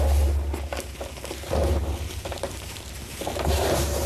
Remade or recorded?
recorded